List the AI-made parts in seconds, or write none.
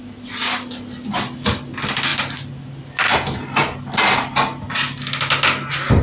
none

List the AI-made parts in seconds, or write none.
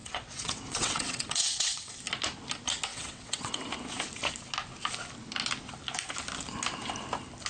0.0-1.9 (vocoder, WaveNeXt); 2.9-3.6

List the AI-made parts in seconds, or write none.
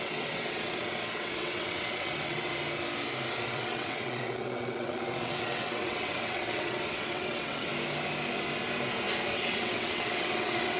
0.0-2.5 (vocoder, WaveNeXt); 3.4-7.7; 9.3-10.8